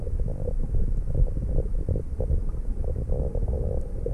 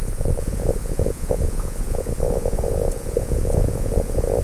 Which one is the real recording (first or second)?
first